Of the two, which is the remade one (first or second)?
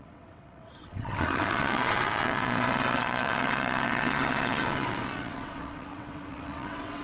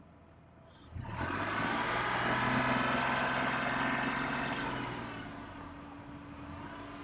first